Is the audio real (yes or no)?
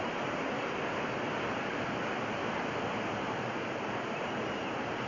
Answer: no